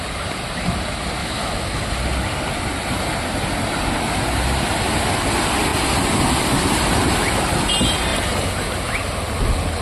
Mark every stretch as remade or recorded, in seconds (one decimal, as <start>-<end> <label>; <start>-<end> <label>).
0.0-1.2 recorded; 1.2-1.9 remade; 1.9-9.8 recorded